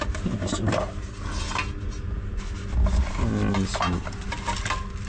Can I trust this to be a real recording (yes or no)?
yes